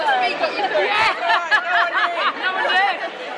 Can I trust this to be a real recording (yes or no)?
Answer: yes